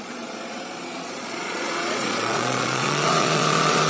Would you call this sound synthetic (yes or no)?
yes